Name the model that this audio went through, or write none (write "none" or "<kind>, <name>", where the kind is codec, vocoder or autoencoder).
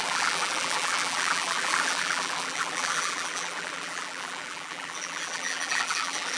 vocoder, BigVGAN v2